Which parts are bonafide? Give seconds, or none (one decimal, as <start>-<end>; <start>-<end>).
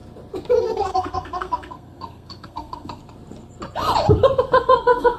0.0-0.6; 3.0-4.6